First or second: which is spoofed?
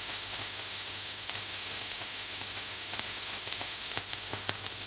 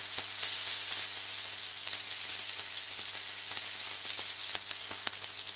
first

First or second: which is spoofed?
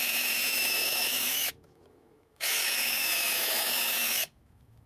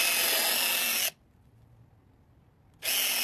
first